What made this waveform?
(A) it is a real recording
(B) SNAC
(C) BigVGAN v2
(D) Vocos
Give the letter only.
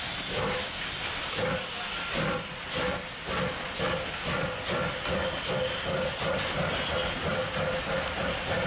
A